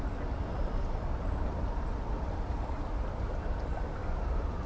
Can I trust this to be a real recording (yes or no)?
yes